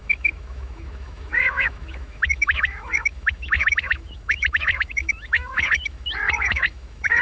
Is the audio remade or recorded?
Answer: remade